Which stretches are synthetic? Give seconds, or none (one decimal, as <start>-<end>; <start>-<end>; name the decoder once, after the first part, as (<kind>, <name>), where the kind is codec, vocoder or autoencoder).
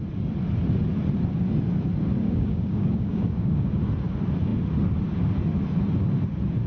2.2-3.8 (codec, DAC)